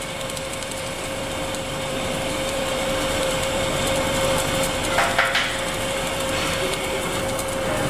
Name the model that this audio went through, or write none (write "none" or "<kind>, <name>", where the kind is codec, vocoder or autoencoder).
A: vocoder, BigVGAN v2